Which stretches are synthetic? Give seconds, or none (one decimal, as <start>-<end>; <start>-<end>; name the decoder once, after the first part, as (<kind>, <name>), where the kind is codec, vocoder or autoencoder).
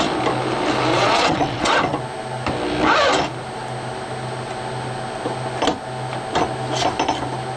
0.9-1.8 (vocoder, WaveNeXt)